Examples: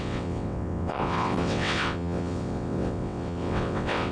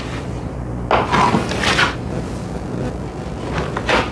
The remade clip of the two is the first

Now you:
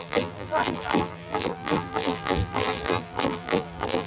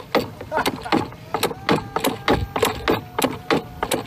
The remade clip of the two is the first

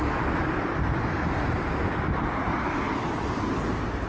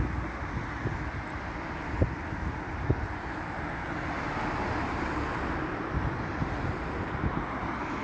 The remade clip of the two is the first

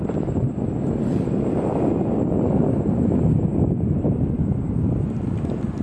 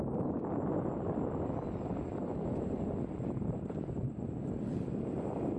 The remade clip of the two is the second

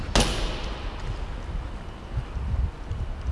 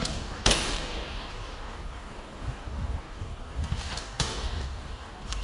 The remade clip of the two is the second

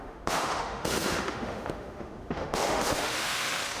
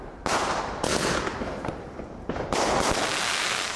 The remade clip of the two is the first